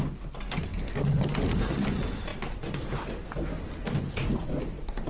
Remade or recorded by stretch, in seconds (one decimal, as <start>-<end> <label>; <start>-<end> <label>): 0.0-0.7 recorded; 0.7-1.3 remade; 1.3-2.3 recorded; 2.3-3.0 remade; 3.0-5.1 recorded